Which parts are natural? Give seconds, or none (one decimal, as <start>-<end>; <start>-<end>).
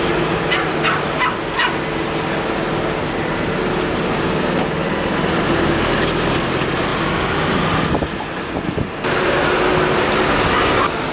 0.0-11.1